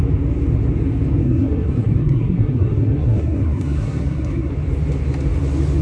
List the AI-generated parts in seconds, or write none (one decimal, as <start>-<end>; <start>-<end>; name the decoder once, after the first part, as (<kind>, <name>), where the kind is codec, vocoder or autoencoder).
1.2-4.5 (codec, SNAC)